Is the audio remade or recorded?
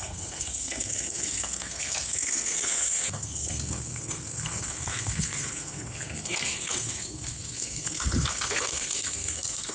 remade